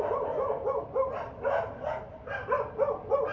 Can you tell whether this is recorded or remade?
recorded